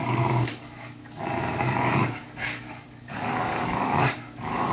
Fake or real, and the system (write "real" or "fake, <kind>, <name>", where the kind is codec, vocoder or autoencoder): fake, codec, DAC